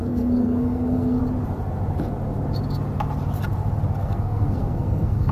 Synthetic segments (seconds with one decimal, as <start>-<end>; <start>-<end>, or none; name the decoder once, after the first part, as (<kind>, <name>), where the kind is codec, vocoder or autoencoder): 0.0-1.2 (codec, SNAC); 4.0-5.3